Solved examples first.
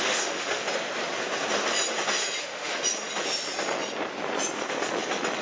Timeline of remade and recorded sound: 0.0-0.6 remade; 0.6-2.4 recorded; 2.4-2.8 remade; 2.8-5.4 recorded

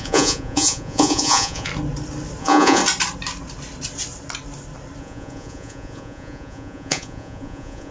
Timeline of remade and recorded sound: 0.0-1.7 remade; 1.7-2.4 recorded; 2.4-2.8 remade; 2.8-5.0 recorded; 5.0-7.9 remade